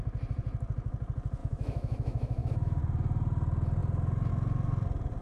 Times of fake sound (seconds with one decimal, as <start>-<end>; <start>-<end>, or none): 1.4-2.8